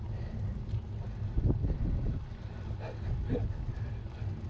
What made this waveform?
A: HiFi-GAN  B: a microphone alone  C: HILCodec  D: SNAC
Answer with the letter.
B